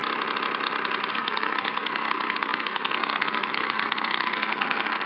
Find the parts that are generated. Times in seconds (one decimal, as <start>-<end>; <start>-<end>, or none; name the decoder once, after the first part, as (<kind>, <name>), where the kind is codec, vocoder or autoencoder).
1.1-5.1 (codec, SNAC)